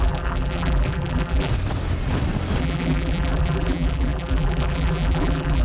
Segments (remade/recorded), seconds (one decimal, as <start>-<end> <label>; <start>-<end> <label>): 0.0-1.5 remade; 1.5-2.6 recorded; 2.6-5.6 remade